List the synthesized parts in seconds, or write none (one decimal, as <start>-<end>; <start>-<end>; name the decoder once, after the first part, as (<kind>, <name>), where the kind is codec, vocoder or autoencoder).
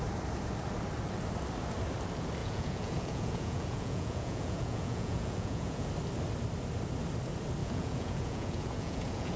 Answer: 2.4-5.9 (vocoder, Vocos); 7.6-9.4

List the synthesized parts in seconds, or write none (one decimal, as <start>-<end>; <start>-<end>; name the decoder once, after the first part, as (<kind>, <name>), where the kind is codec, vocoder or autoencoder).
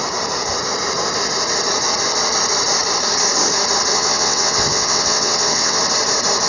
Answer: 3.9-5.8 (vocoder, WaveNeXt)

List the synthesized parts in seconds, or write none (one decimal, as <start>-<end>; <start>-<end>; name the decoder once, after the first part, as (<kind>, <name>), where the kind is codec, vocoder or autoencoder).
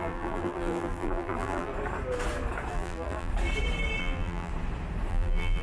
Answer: 0.0-1.7 (vocoder, BigVGAN v2); 2.7-3.3; 4.0-4.5; 5.1-5.6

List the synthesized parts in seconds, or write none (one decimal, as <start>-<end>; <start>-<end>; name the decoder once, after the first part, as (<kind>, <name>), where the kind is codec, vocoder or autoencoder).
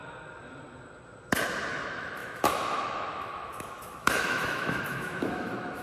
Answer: 1.7-5.8 (autoencoder, DAC-VAE)